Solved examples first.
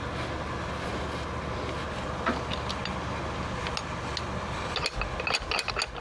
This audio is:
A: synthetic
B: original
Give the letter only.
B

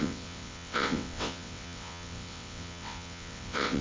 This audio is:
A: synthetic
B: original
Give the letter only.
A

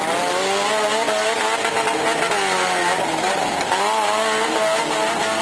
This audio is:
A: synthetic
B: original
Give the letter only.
B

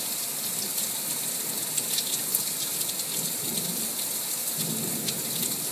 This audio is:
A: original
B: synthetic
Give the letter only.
A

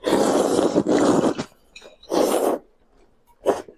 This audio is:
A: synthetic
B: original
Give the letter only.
B